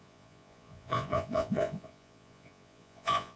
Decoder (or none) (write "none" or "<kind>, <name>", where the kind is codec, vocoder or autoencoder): vocoder, Vocos